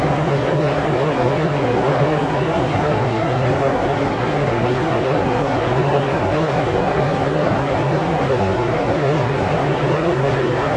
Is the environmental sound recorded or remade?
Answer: remade